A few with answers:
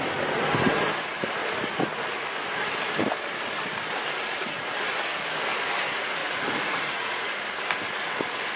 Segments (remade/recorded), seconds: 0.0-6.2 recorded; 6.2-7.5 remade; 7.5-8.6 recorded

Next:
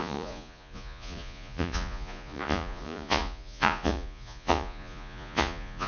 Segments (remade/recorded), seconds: 0.0-5.9 remade

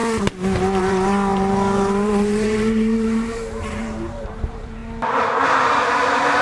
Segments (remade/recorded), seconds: 0.0-0.8 recorded; 0.8-4.8 remade; 4.8-5.6 recorded; 5.6-6.4 remade

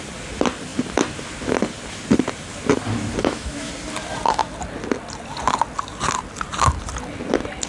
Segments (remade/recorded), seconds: 0.0-3.2 recorded; 3.2-3.7 remade; 3.7-7.7 recorded

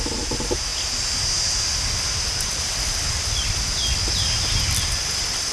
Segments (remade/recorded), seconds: 0.0-5.5 recorded